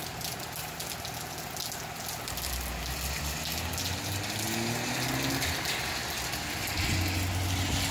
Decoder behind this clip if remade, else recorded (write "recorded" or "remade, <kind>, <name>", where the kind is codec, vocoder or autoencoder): recorded